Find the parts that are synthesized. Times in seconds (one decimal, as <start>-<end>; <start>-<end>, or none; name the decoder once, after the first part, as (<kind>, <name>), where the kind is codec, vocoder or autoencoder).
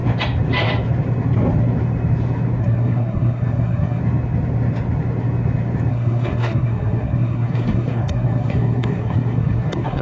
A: 2.6-4.0 (codec, SNAC); 5.9-10.0